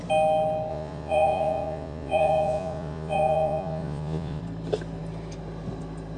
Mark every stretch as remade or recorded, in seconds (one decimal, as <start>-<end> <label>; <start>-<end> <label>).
0.0-0.7 recorded; 0.7-4.4 remade; 4.4-6.2 recorded